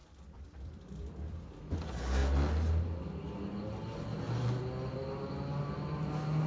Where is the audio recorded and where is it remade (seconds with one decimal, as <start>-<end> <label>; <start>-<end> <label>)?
0.0-1.5 remade; 1.5-6.5 recorded